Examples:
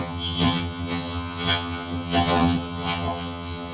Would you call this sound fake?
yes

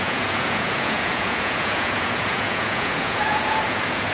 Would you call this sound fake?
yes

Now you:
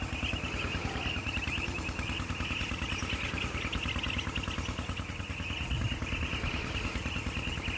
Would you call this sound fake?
no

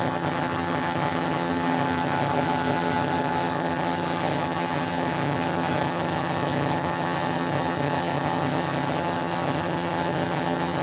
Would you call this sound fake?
yes